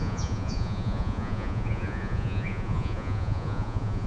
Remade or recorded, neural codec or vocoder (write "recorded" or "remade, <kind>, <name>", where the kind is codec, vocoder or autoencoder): remade, vocoder, Vocos